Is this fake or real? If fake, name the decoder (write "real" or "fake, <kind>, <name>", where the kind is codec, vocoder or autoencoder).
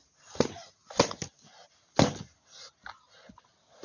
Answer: real